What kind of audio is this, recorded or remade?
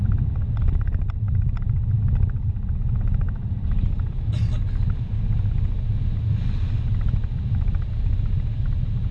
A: recorded